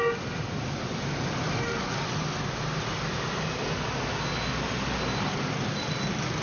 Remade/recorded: recorded